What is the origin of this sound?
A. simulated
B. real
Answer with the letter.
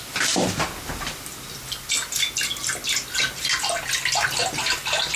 B